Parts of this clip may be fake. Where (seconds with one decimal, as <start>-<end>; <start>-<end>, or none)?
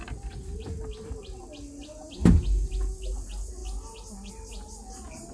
none